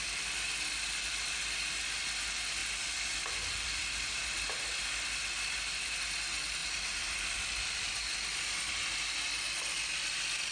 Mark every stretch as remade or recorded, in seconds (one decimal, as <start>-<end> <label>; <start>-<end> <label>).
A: 0.0-10.5 recorded